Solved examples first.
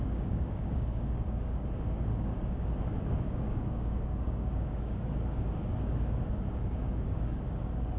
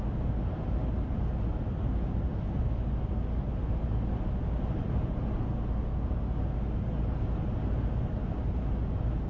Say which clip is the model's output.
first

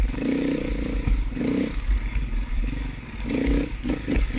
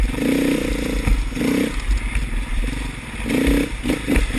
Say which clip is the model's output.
first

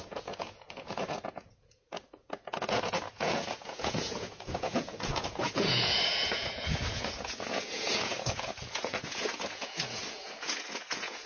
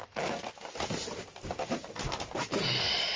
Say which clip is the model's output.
first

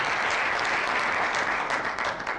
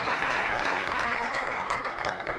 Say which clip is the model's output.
second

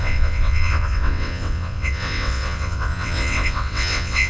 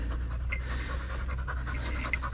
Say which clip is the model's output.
first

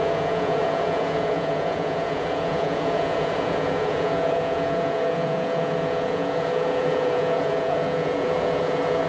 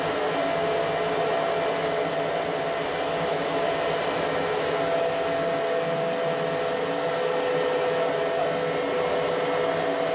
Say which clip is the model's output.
first